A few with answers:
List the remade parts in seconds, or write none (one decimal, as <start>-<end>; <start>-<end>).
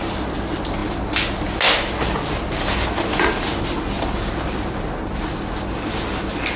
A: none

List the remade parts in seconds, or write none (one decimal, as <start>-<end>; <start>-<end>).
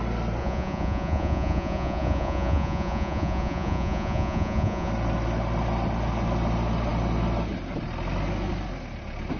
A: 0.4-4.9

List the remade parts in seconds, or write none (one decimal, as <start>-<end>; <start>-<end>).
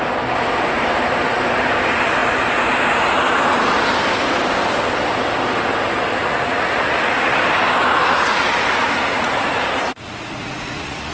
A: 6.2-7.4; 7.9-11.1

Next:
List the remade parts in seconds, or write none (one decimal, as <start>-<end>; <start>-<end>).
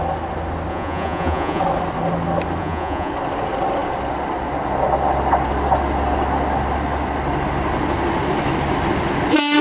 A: 0.7-1.6; 2.6-3.1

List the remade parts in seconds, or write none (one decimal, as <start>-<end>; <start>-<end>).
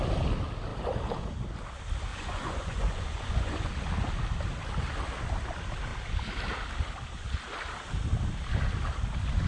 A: 2.1-3.7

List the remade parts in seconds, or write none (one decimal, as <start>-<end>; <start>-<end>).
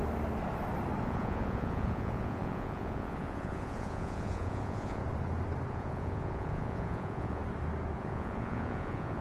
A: 1.0-5.0; 5.7-7.4; 8.0-9.2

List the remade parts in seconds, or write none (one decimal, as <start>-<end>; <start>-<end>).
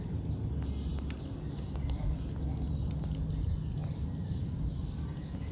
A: none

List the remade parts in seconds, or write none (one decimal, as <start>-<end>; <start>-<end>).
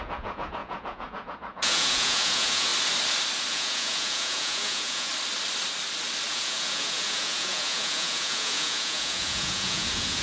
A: 0.0-2.7; 3.5-5.1; 6.3-10.2